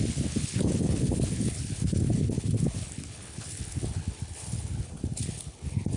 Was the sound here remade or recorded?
remade